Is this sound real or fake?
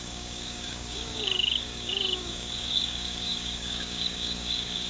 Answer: fake